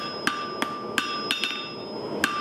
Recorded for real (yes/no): yes